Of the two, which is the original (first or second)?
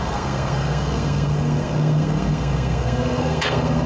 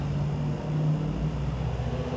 second